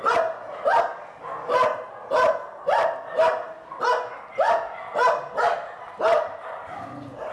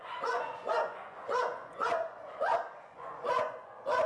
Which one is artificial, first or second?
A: second